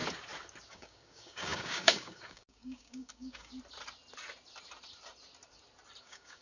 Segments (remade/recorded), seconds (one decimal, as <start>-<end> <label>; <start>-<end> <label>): 0.0-0.7 recorded; 0.7-3.5 remade; 3.5-6.0 recorded; 6.0-6.4 remade